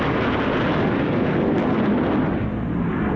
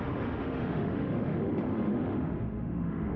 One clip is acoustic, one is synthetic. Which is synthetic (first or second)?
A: second